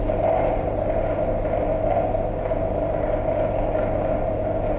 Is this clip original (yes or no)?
yes